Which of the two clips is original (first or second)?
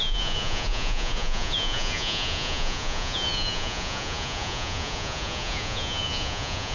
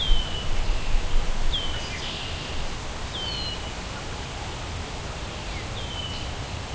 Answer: second